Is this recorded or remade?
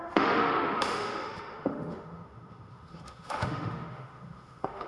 remade